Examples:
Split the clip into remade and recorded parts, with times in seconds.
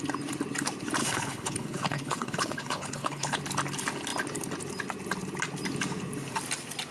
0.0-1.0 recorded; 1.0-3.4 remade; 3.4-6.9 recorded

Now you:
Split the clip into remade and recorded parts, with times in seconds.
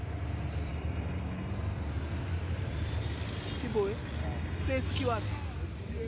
0.0-0.7 recorded; 0.7-1.5 remade; 1.5-4.2 recorded; 4.2-4.9 remade; 4.9-6.1 recorded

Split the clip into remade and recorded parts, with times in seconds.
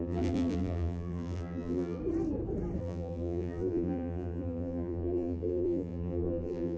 0.0-2.0 remade; 2.0-2.8 recorded; 2.8-6.8 remade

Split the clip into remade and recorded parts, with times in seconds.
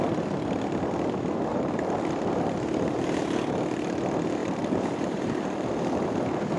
0.0-1.5 recorded; 1.5-2.0 remade; 2.0-4.4 recorded; 4.4-5.7 remade; 5.7-6.6 recorded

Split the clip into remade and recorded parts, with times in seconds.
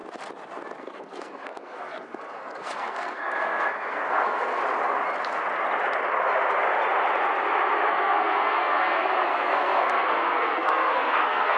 0.0-0.8 recorded; 0.8-4.6 remade; 4.6-7.9 recorded; 7.9-11.6 remade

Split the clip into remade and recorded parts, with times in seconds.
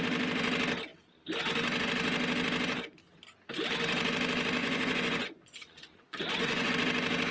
0.0-4.6 recorded; 4.6-6.7 remade; 6.7-7.3 recorded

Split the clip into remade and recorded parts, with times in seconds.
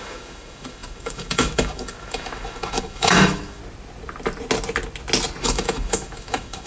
0.0-3.6 remade; 3.6-5.4 recorded; 5.4-6.7 remade